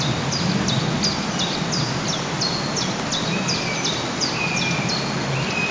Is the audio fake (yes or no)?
no